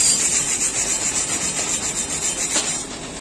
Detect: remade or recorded recorded